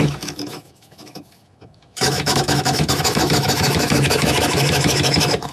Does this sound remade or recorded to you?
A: remade